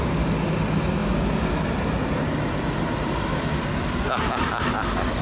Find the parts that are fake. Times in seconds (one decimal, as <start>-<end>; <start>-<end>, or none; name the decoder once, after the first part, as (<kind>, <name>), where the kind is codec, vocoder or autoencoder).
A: none